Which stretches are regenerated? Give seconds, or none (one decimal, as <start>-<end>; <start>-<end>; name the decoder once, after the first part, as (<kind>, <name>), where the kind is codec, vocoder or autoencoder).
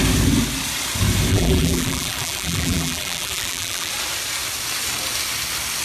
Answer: 1.3-3.9 (vocoder, BigVGAN v2)